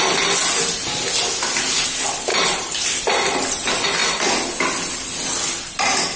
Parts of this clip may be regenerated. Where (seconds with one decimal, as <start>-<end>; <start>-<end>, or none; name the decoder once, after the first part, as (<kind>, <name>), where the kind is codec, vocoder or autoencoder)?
2.3-3.0 (vocoder, BigVGAN v2)